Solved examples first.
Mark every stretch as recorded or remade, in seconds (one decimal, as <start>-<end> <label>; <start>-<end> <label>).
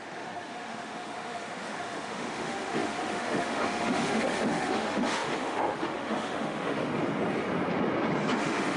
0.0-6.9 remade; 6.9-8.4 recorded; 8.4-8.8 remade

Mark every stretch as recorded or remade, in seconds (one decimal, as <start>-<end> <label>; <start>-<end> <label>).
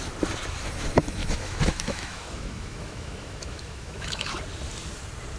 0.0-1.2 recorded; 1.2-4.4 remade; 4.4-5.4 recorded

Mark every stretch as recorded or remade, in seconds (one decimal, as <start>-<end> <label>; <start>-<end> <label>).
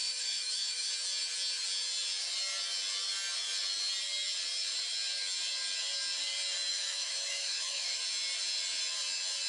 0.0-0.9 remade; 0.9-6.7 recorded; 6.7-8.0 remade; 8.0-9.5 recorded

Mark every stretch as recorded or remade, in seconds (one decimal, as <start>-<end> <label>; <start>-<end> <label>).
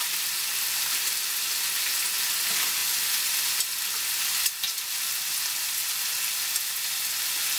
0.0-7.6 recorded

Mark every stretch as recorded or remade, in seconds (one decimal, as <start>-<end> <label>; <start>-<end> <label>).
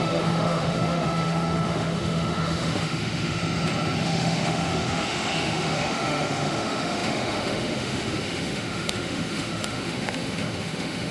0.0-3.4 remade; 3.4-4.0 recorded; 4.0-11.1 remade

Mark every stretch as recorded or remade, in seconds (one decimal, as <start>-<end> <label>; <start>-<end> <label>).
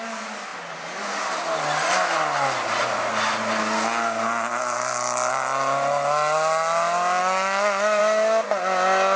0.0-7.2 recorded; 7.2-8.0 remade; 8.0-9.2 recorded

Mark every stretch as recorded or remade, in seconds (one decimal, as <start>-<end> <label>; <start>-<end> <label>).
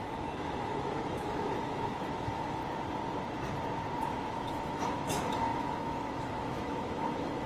0.0-2.6 remade; 2.6-4.3 recorded; 4.3-7.5 remade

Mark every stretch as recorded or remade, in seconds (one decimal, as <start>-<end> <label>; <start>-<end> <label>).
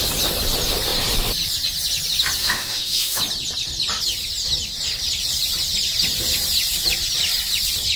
0.0-2.4 recorded; 2.4-3.2 remade; 3.2-8.0 recorded